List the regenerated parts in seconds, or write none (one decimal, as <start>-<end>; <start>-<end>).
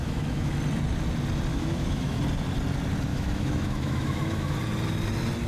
0.0-0.5; 1.5-2.2; 3.1-4.6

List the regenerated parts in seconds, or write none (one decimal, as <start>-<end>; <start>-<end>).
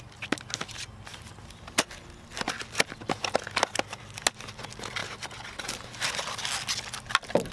none